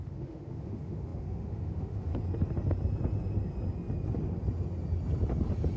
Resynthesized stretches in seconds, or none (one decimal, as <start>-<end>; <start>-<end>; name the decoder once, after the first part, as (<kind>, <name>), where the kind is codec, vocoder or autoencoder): 0.0-2.1 (autoencoder, DAC-VAE)